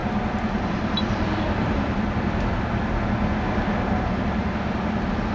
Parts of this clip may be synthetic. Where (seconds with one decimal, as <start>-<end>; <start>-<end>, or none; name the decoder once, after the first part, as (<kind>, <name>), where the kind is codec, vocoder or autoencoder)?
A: 0.0-2.0 (vocoder, BigVGAN v2)